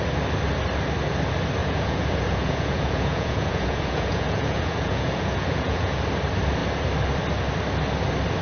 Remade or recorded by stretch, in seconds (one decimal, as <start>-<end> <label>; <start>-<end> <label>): 0.0-1.6 recorded; 1.6-6.0 remade; 6.0-8.4 recorded